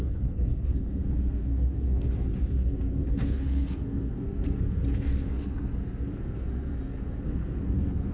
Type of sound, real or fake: fake